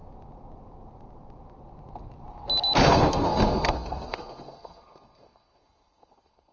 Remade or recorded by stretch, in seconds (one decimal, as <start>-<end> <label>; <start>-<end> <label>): 0.0-2.8 recorded; 2.8-6.5 remade